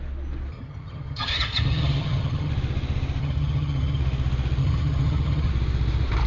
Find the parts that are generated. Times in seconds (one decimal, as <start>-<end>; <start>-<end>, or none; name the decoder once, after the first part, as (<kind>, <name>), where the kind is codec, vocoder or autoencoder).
0.5-2.5 (vocoder, HiFi-GAN); 3.2-4.0; 4.6-5.5